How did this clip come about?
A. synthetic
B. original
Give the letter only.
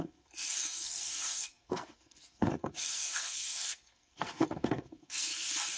A